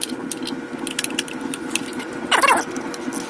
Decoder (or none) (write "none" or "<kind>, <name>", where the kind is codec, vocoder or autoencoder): none